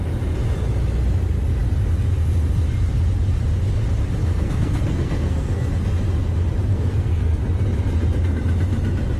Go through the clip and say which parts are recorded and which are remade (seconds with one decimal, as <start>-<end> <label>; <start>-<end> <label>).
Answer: 0.0-4.2 recorded; 4.2-5.7 remade; 5.7-6.7 recorded; 6.7-7.4 remade; 7.4-9.2 recorded